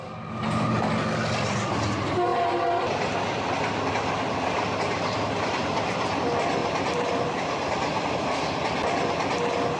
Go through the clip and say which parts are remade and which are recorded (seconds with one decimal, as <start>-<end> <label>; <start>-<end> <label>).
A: 0.0-6.6 recorded; 6.6-8.0 remade; 8.0-9.8 recorded